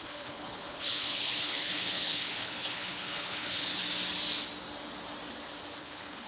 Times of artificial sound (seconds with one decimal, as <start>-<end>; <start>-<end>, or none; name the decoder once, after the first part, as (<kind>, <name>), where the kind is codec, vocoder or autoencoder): 0.0-3.8 (codec, HILCodec); 5.8-6.3